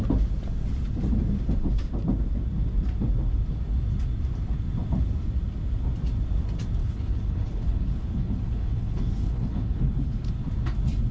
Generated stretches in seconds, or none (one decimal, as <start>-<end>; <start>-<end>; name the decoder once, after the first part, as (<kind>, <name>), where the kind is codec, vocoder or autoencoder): 6.8-10.3 (codec, HILCodec)